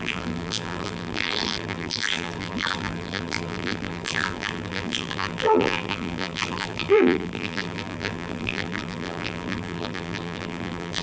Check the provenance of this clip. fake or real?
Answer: fake